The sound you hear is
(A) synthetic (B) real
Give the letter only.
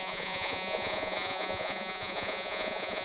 A